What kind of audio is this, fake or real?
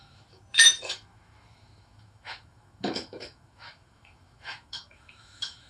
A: fake